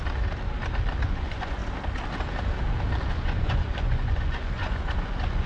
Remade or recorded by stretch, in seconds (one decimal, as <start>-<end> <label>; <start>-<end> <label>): 0.0-1.0 recorded; 1.0-1.6 remade; 1.6-3.1 recorded; 3.1-5.5 remade